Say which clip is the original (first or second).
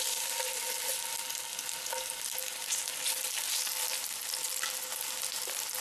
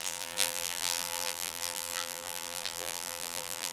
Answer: first